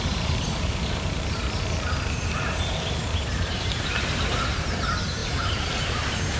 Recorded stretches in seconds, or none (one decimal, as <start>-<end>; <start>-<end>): none